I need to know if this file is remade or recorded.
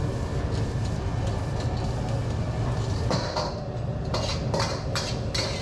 recorded